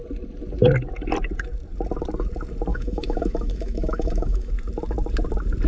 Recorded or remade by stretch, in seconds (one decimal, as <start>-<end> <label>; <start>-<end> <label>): 0.0-2.7 recorded; 2.7-4.5 remade; 4.5-5.7 recorded